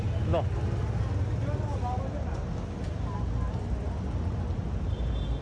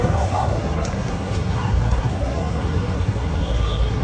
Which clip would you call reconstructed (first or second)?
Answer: second